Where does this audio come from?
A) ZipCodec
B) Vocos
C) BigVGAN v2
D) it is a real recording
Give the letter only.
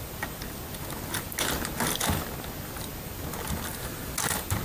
D